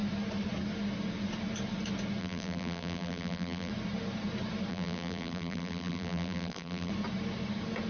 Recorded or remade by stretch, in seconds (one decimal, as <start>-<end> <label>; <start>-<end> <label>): 0.0-2.2 recorded; 2.2-3.7 remade; 3.7-4.7 recorded; 4.7-6.9 remade; 6.9-7.9 recorded